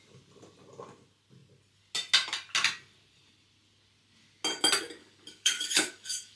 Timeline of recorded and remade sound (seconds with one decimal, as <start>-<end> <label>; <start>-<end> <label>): 0.0-5.0 recorded; 5.0-6.4 remade